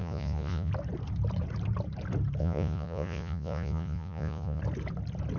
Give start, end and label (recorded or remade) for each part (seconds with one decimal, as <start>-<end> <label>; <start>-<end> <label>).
0.0-0.7 remade; 0.7-2.4 recorded; 2.4-4.6 remade; 4.6-5.4 recorded